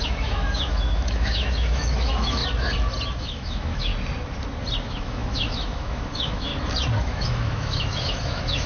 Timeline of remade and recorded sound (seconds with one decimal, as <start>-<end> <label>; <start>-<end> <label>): 0.0-2.4 remade; 2.4-3.2 recorded; 3.2-3.9 remade; 3.9-4.8 recorded; 4.8-6.5 remade; 6.5-7.0 recorded; 7.0-8.7 remade